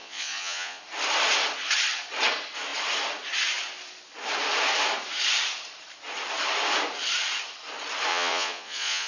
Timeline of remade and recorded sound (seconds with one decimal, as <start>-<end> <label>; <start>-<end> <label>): 0.0-0.8 remade; 0.8-8.1 recorded; 8.1-9.1 remade